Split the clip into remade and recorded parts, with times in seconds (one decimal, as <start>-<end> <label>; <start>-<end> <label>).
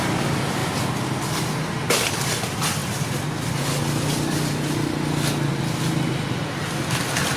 0.0-7.4 recorded